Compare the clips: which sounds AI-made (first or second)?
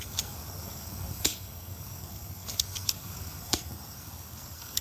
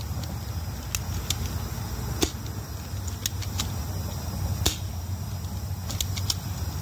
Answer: first